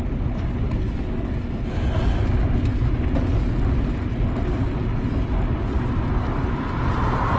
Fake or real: real